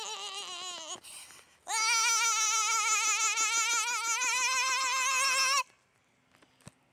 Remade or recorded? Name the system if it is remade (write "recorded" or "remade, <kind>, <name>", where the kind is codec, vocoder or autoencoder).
recorded